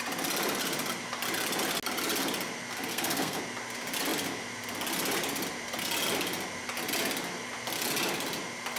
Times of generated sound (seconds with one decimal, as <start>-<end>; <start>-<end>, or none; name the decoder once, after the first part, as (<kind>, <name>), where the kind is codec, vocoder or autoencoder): 2.9-3.4 (codec, SNAC)